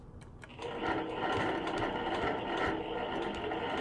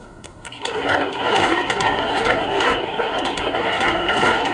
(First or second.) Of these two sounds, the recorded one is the first